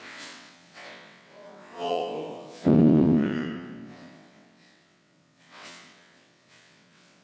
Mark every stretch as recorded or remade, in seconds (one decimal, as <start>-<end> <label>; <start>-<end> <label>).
0.0-7.2 remade